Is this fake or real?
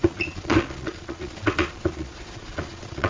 fake